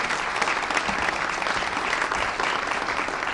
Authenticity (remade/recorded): recorded